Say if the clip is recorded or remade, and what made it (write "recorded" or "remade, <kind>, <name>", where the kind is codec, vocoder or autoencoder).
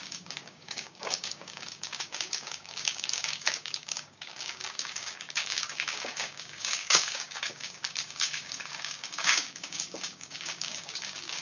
remade, codec, DAC